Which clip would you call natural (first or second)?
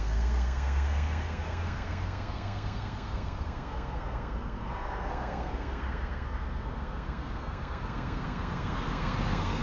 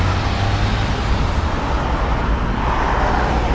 second